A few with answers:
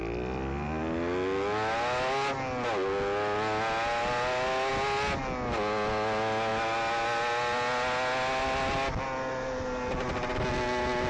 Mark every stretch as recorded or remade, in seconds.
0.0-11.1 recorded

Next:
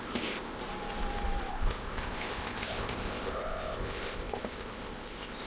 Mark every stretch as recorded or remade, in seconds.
0.0-0.6 remade; 0.6-1.5 recorded; 1.5-5.5 remade

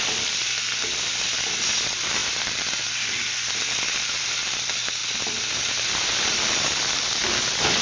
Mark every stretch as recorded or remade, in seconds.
0.0-7.8 remade

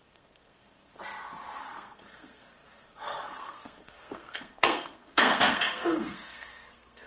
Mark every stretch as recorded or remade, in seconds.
0.0-0.9 remade; 0.9-1.6 recorded; 1.6-7.1 remade

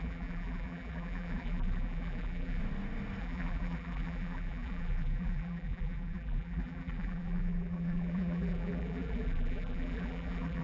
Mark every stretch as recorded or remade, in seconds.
0.0-2.6 remade; 2.6-3.2 recorded; 3.2-10.6 remade

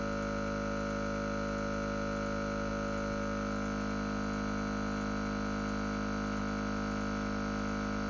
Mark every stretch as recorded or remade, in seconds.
0.0-8.1 recorded